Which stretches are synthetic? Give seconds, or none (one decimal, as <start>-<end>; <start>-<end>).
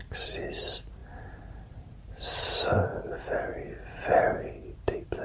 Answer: 0.0-5.2